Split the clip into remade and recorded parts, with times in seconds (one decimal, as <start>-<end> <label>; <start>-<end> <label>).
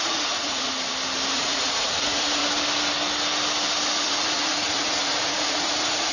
0.0-0.7 remade; 0.7-1.3 recorded; 1.3-2.4 remade; 2.4-4.0 recorded; 4.0-6.1 remade